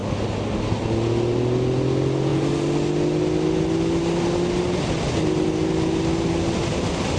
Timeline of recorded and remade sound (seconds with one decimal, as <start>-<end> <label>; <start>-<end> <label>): 0.0-7.2 recorded

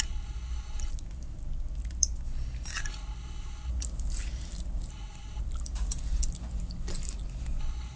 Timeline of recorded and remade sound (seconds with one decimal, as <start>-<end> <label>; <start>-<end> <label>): 0.0-0.9 remade; 0.9-2.8 recorded; 2.8-3.7 remade; 3.7-4.9 recorded; 4.9-5.4 remade; 5.4-7.6 recorded; 7.6-8.0 remade

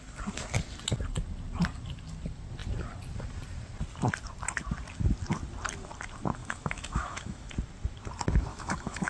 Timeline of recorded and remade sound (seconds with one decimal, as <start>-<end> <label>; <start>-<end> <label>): 0.0-6.4 recorded; 6.4-7.5 remade; 7.5-8.5 recorded; 8.5-9.1 remade

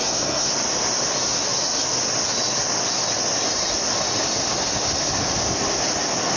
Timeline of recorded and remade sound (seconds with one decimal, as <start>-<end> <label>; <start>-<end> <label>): 0.0-0.5 remade; 0.5-6.4 recorded